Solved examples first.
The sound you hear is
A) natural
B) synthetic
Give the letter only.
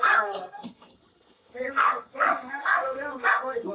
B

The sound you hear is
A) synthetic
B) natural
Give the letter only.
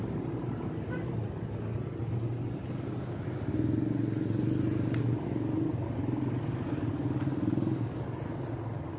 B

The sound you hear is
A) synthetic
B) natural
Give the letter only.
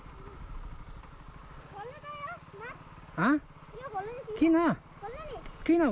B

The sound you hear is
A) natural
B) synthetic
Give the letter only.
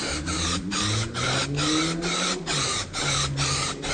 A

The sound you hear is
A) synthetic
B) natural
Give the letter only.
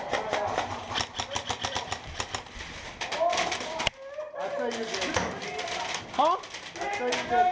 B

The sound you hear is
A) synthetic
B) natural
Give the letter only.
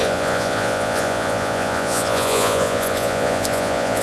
A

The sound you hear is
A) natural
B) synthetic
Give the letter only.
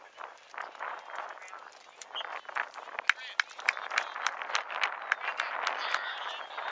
A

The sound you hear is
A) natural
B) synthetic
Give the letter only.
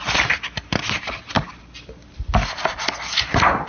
A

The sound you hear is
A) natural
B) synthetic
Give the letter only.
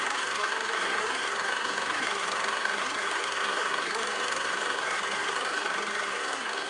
B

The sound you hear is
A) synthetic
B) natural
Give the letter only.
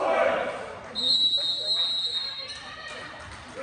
B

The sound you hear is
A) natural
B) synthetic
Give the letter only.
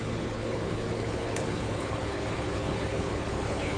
B